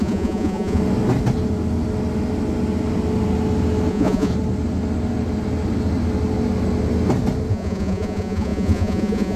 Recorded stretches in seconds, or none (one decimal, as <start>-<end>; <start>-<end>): 0.8-3.9; 4.3-7.5